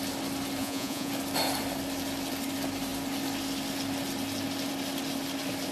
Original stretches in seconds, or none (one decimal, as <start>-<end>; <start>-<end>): 0.0-0.6; 1.1-5.7

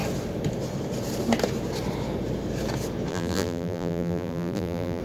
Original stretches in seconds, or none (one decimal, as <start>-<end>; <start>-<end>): 0.0-3.1

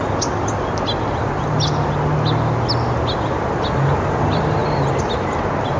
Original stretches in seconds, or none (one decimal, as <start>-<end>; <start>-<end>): 0.0-5.8

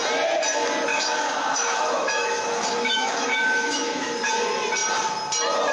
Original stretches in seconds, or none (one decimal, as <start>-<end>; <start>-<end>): 0.0-0.9; 4.3-5.7

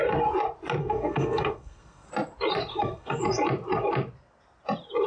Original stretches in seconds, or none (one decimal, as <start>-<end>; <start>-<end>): 0.0-0.8; 2.1-2.7; 3.2-5.1

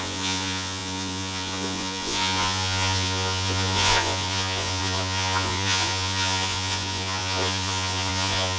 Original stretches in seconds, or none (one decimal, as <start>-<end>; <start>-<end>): none

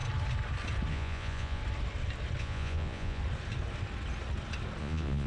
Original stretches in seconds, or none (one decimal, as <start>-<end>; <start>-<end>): 0.0-0.9; 1.6-2.4; 3.2-4.8